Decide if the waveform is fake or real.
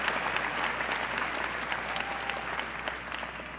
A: real